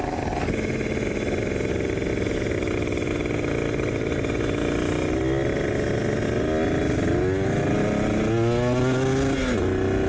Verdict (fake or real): real